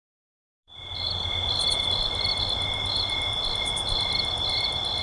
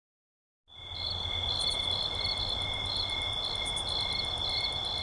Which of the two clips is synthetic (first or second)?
first